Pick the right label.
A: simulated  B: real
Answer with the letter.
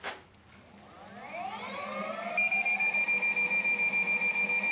B